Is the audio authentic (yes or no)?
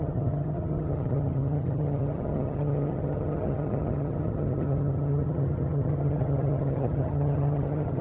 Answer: no